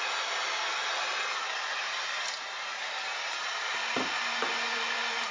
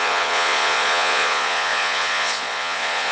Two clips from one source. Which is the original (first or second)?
first